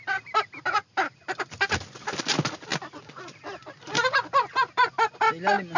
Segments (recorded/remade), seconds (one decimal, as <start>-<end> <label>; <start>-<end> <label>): 0.0-5.8 recorded